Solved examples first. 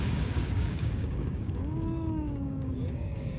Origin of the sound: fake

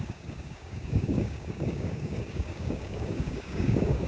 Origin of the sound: fake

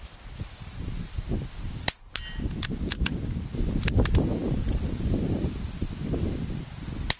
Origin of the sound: real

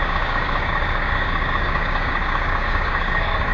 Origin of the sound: fake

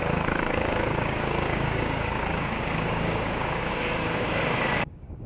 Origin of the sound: fake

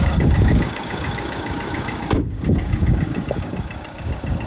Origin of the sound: fake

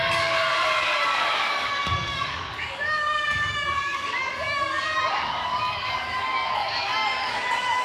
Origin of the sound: fake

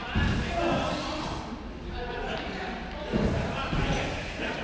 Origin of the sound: real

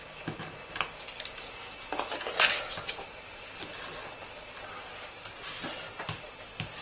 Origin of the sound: real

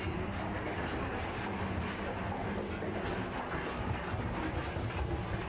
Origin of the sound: real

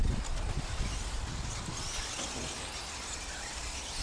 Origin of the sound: real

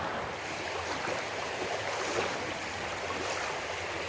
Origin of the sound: real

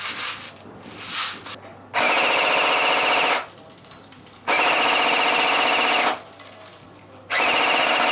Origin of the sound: real